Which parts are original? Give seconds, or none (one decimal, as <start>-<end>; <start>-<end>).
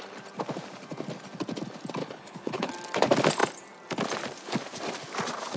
0.0-2.0; 2.7-5.6